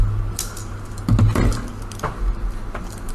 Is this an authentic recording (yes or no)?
yes